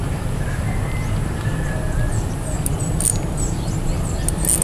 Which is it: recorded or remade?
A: recorded